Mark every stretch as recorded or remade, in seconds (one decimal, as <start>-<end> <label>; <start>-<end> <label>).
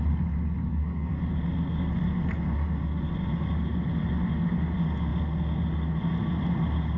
0.0-0.7 recorded; 0.7-1.2 remade; 1.2-7.0 recorded